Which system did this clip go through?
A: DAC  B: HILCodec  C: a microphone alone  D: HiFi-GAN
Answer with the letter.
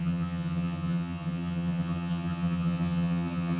D